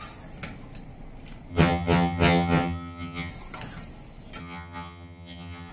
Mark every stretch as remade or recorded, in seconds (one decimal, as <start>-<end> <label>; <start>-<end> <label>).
0.0-1.5 recorded; 1.5-3.3 remade; 3.3-4.4 recorded; 4.4-5.7 remade